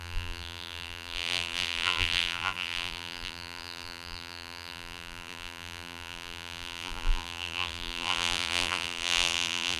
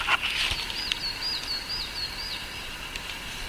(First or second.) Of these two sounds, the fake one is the first